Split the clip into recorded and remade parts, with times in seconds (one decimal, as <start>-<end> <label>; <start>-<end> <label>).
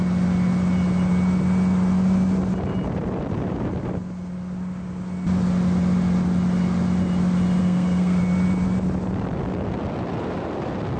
0.0-7.6 recorded; 7.6-8.2 remade; 8.2-11.0 recorded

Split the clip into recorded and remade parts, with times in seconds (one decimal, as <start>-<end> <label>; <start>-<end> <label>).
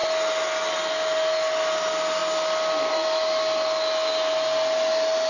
0.0-5.3 recorded